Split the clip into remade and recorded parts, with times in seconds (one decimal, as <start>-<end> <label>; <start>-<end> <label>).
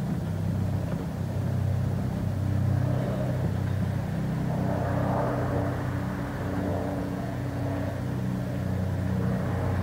0.0-6.7 recorded; 6.7-7.9 remade; 7.9-9.8 recorded